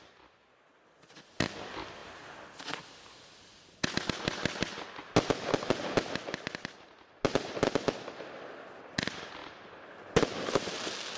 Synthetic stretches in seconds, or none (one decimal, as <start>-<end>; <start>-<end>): none